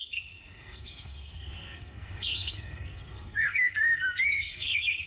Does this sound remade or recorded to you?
remade